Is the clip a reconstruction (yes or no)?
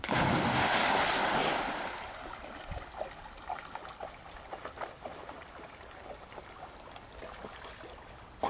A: no